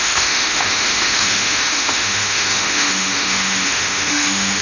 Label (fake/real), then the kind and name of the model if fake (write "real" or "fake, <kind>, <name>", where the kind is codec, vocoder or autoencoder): fake, autoencoder, DAC-VAE